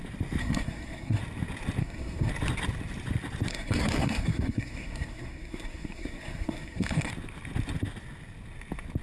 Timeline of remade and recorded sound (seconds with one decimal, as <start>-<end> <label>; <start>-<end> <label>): 0.0-0.4 recorded; 0.4-1.2 remade; 1.2-1.8 recorded; 1.8-2.3 remade; 2.3-3.5 recorded; 3.5-7.1 remade; 7.1-9.0 recorded